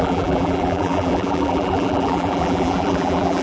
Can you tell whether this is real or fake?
fake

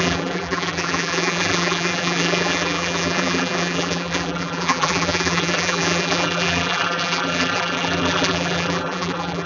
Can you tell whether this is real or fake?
fake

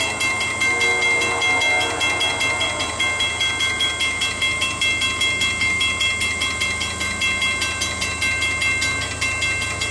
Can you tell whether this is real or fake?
real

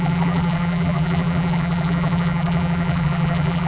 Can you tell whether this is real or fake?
fake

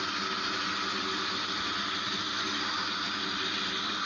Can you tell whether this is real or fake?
real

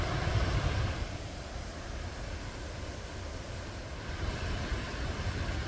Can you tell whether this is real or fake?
fake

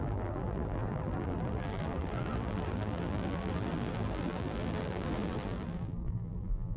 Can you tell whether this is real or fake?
fake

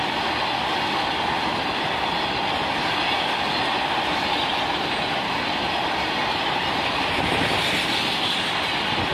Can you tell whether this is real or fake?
real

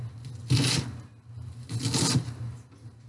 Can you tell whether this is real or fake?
real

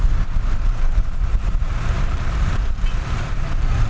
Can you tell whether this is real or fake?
fake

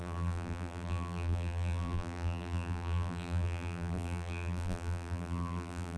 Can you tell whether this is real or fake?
fake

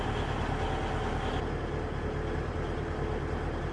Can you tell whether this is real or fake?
real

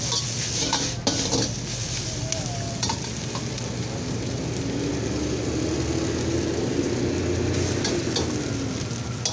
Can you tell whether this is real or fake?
real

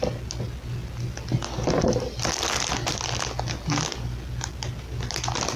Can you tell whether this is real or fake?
real